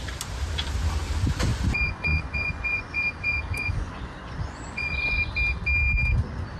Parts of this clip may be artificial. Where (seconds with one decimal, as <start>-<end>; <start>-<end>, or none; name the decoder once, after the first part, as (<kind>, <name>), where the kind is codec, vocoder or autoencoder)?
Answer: 1.5-5.3 (vocoder, Vocos)